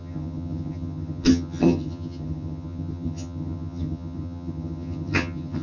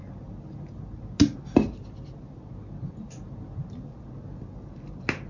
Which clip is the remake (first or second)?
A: first